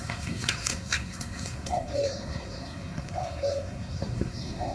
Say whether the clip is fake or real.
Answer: fake